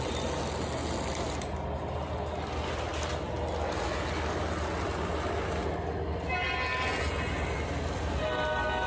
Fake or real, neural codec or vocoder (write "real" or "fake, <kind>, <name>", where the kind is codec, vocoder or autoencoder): real